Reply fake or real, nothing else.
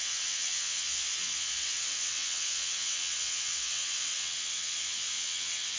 fake